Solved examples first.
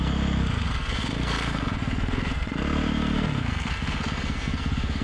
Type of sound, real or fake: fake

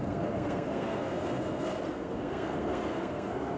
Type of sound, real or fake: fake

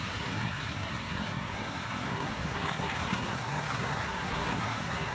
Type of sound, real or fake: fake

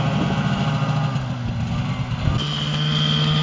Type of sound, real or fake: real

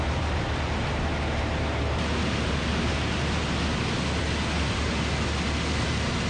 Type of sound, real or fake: real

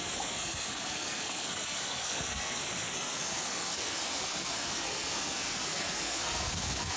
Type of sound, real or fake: fake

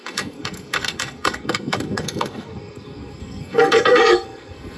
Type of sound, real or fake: fake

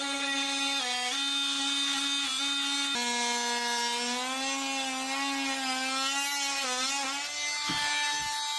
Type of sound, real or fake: real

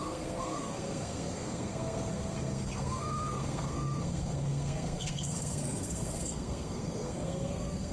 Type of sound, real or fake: fake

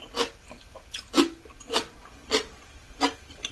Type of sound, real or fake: real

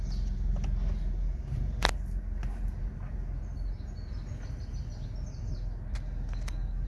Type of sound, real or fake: real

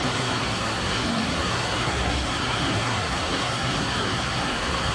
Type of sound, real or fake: fake